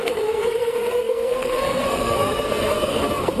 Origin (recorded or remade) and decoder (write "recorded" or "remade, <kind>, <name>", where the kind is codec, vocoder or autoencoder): remade, codec, SNAC